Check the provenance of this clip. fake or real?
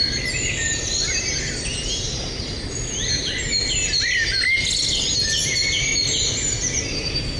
real